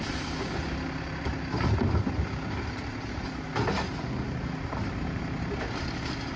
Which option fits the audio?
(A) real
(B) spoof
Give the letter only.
A